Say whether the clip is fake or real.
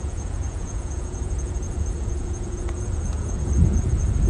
fake